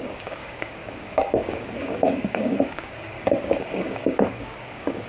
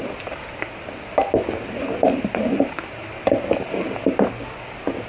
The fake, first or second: first